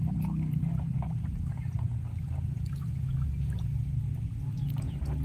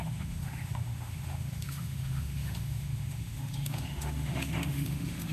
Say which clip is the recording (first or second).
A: first